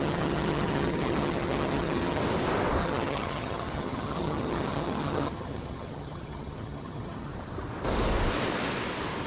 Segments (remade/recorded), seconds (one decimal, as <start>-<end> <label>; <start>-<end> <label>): 0.0-2.2 remade; 2.2-2.8 recorded; 2.8-7.3 remade; 7.3-9.3 recorded